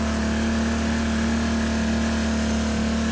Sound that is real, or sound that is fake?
real